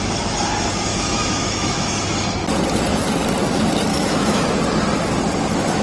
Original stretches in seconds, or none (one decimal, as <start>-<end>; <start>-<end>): 0.0-0.9; 2.0-3.9; 4.4-5.8